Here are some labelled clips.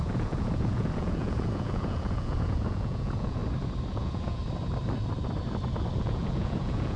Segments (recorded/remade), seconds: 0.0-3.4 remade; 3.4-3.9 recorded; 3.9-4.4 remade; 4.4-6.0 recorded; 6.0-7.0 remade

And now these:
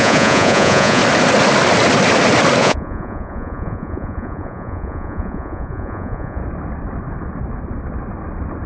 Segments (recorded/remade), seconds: 0.0-1.0 remade; 1.0-2.6 recorded; 2.6-6.4 remade; 6.4-8.7 recorded

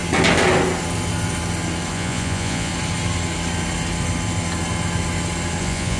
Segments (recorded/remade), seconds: 0.0-1.9 recorded; 1.9-2.7 remade; 2.7-5.6 recorded; 5.6-6.0 remade

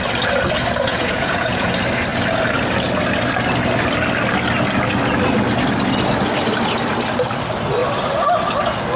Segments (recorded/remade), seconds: 0.0-0.9 recorded; 0.9-1.7 remade; 1.7-9.0 recorded